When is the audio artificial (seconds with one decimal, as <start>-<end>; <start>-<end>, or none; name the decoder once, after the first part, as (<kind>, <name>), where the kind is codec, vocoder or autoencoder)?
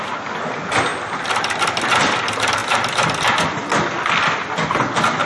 none